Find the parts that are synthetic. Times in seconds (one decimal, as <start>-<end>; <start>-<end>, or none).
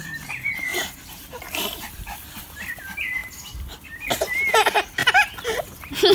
0.0-3.2; 4.5-5.0